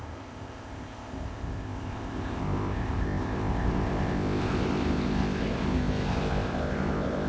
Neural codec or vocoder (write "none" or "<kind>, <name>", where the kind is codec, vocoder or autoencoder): codec, ZipCodec